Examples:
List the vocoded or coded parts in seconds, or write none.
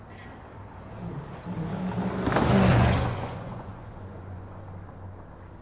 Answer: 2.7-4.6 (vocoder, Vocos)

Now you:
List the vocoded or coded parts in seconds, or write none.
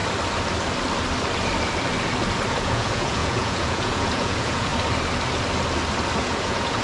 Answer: 2.5-4.7 (vocoder, Vocos); 6.2-6.8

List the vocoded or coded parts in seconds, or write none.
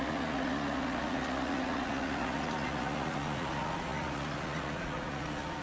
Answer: 0.0-5.6 (vocoder, Vocos)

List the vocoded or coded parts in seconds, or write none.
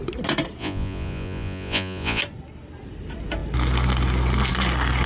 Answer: 0.6-2.2 (vocoder, Vocos)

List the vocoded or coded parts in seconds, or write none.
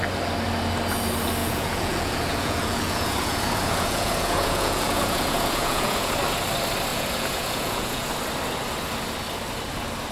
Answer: 1.4-6.1 (vocoder, Vocos); 6.9-8.1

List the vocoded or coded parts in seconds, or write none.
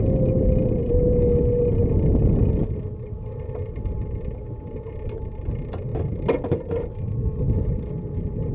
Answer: none